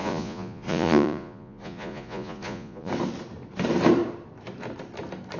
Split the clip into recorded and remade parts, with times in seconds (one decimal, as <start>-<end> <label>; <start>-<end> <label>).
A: 0.0-2.9 remade; 2.9-5.4 recorded